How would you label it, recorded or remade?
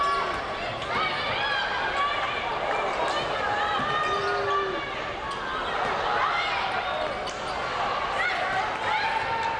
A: recorded